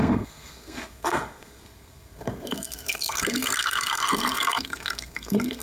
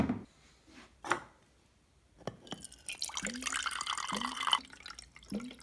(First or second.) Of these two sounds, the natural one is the second